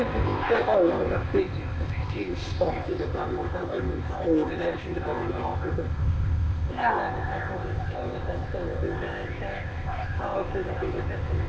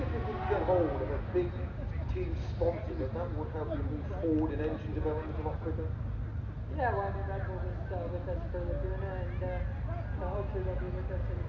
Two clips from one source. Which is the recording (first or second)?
second